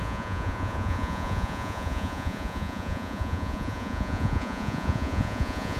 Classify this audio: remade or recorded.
remade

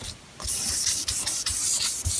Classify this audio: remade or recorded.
remade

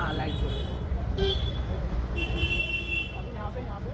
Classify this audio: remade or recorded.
remade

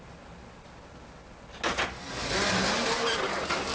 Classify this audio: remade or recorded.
recorded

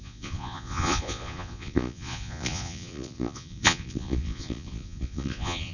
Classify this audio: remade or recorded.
remade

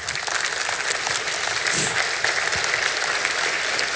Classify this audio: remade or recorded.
recorded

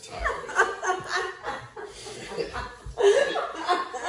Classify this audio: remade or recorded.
recorded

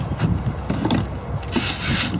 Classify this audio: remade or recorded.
recorded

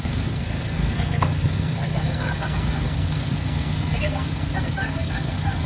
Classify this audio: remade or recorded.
remade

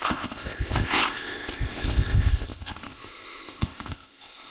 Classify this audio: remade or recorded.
remade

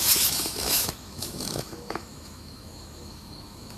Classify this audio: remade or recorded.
remade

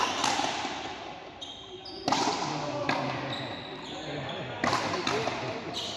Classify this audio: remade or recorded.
recorded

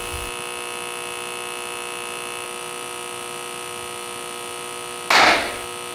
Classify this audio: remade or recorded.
recorded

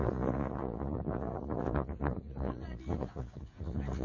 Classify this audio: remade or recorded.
remade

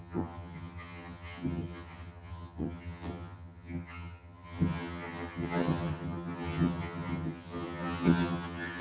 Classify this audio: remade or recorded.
remade